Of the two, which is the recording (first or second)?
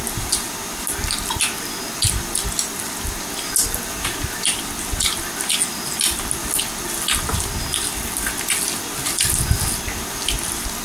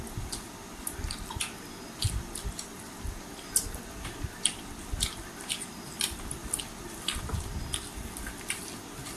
first